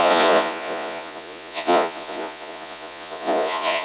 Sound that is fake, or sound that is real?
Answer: fake